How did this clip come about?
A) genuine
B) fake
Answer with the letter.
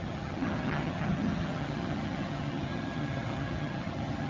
B